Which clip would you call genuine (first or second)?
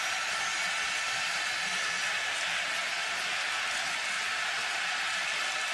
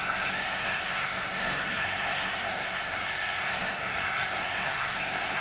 first